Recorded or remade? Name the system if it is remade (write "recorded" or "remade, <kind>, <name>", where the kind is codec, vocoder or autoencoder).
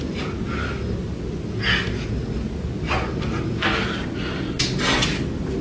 recorded